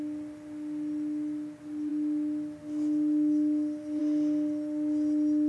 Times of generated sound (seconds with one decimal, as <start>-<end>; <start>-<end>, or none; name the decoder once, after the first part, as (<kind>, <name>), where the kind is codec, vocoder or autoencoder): none